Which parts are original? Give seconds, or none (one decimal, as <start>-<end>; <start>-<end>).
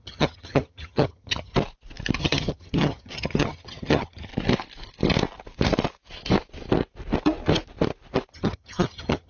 1.5-2.2; 4.3-8.3